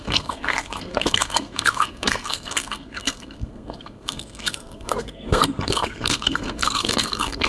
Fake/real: fake